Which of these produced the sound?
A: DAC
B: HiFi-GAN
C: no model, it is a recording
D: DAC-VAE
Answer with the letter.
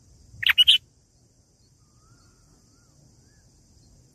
C